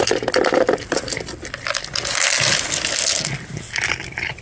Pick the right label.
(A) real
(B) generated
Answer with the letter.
A